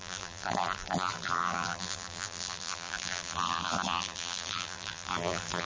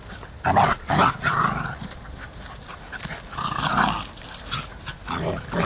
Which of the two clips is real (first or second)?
second